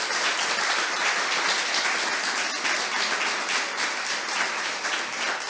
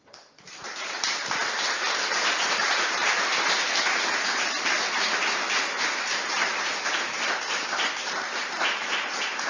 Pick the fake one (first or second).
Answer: second